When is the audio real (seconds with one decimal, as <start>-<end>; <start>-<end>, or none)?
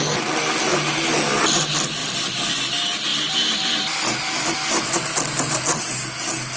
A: 0.0-6.6